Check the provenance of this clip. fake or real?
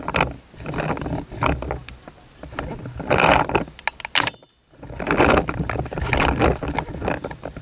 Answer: real